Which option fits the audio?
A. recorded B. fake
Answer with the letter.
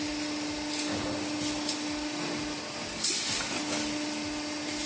A